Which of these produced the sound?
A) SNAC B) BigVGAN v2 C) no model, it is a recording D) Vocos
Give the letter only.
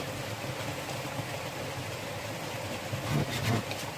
C